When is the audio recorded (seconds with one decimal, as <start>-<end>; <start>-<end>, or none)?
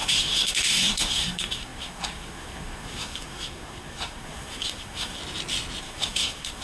5.2-5.8